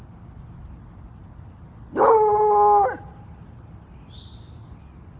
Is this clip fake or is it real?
real